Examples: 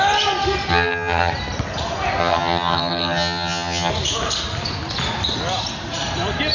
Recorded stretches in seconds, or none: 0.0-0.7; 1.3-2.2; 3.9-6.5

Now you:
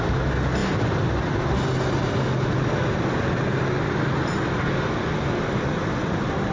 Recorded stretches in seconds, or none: 0.0-6.5

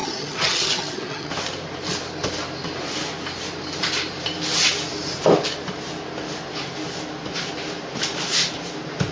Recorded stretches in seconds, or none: 1.3-9.1

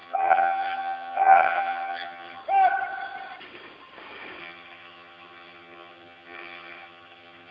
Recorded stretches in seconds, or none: 2.4-4.4

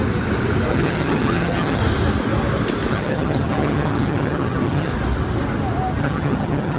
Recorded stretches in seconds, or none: 0.0-0.7; 1.8-2.9; 4.9-6.0

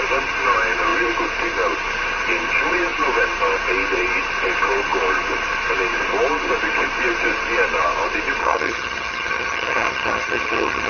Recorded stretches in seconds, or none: 0.0-8.4